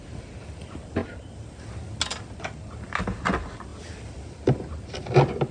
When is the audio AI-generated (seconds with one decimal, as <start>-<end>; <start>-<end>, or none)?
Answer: 1.0-1.6